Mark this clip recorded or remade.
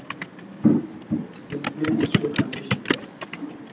recorded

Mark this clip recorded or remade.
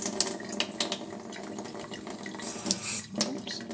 recorded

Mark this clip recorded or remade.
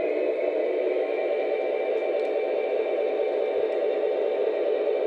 recorded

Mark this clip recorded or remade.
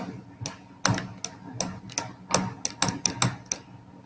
recorded